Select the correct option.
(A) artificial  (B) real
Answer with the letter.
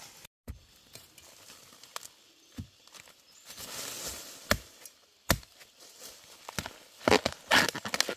B